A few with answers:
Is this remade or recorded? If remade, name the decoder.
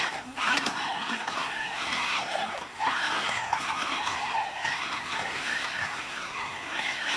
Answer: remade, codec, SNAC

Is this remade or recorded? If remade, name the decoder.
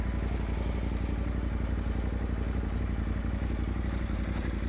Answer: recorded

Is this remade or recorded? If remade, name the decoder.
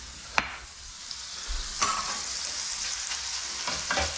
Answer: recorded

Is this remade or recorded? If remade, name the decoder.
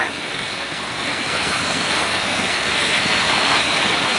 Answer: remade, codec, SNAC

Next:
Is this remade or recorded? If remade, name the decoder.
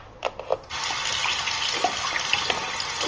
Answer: recorded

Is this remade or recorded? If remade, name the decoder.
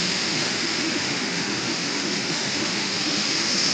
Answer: remade, autoencoder, DAC-VAE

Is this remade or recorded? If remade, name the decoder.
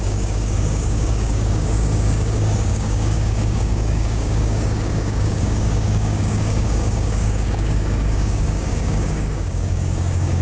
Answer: remade, codec, DAC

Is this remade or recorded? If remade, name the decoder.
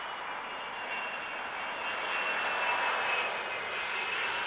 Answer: recorded